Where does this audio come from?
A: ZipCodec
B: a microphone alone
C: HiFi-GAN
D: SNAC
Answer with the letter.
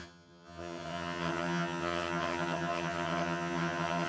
C